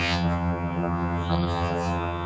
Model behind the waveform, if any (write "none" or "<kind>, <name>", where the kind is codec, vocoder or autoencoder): vocoder, HiFi-GAN